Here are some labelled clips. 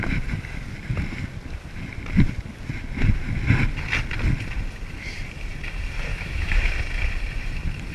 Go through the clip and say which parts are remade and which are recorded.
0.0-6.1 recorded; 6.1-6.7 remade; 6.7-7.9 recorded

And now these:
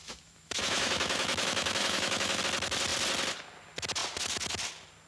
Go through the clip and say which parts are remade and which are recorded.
0.0-2.4 remade; 2.4-5.1 recorded

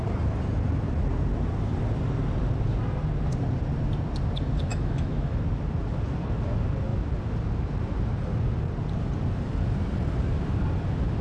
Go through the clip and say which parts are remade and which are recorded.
0.0-4.7 recorded; 4.7-5.4 remade; 5.4-11.2 recorded

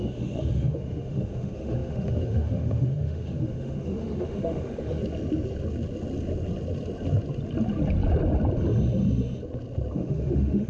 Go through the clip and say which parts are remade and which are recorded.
0.0-5.0 remade; 5.0-9.9 recorded; 9.9-10.7 remade

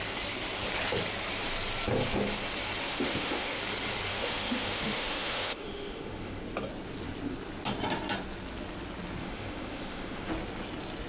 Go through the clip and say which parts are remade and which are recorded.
0.0-2.8 recorded; 2.8-3.6 remade; 3.6-4.1 recorded; 4.1-6.4 remade; 6.4-9.2 recorded; 9.2-10.3 remade; 10.3-11.1 recorded